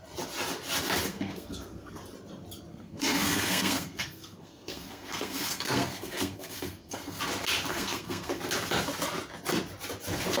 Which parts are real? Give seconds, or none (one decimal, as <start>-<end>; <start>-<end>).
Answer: 0.0-1.1; 2.0-2.7; 7.2-7.7; 8.4-10.4